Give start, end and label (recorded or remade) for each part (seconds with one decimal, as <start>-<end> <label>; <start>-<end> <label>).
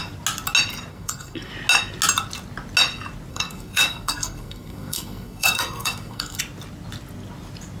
0.0-0.9 recorded; 0.9-1.5 remade; 1.5-3.3 recorded; 3.3-6.4 remade; 6.4-7.8 recorded